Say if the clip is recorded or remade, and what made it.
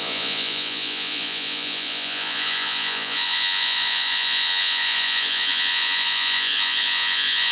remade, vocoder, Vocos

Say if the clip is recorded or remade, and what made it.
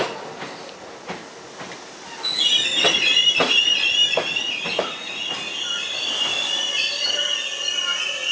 recorded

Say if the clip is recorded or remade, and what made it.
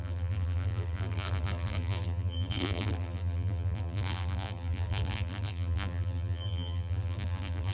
remade, vocoder, BigVGAN v2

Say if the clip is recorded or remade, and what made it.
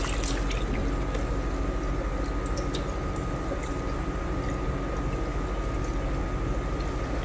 recorded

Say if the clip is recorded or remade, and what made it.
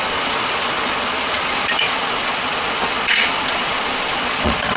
remade, vocoder, Vocos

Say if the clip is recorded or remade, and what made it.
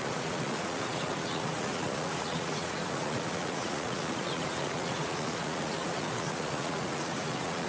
remade, vocoder, Vocos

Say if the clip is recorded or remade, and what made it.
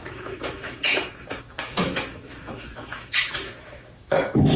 remade, autoencoder, DAC-VAE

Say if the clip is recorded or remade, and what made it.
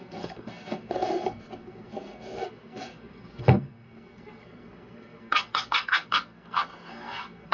remade, codec, SNAC